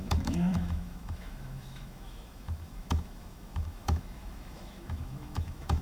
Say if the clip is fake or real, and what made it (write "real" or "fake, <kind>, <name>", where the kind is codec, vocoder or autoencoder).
fake, autoencoder, DAC-VAE